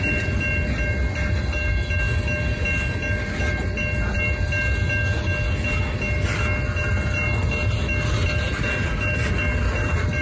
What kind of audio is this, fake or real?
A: real